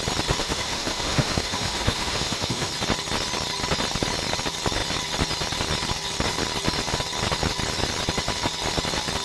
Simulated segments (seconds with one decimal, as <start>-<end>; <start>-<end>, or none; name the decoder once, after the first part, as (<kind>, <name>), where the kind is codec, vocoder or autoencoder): 0.4-2.7 (autoencoder, DAC-VAE)